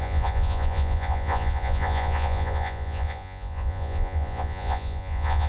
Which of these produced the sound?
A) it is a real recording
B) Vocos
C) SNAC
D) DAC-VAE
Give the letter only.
B